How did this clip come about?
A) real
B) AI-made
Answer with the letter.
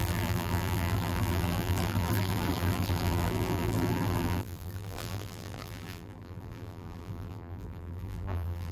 B